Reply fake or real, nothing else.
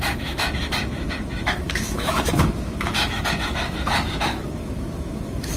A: fake